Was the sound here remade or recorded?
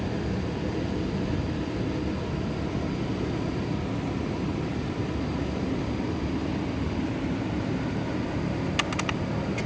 recorded